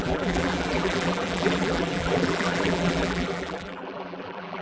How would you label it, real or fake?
fake